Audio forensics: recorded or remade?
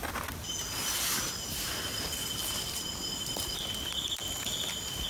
recorded